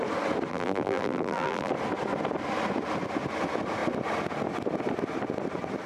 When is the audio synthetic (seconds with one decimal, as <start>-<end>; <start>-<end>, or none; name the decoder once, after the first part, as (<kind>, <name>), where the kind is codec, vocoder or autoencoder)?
0.5-1.7 (vocoder, BigVGAN v2)